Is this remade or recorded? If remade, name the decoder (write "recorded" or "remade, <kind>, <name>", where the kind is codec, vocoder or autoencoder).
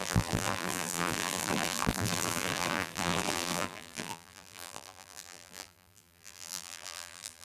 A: remade, vocoder, BigVGAN v2